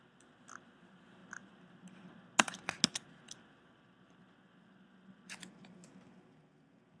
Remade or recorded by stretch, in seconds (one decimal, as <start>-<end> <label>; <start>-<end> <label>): 0.0-7.0 recorded